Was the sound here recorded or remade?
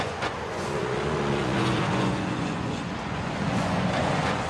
remade